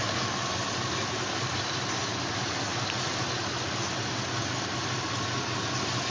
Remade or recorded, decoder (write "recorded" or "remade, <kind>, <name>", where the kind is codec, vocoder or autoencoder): recorded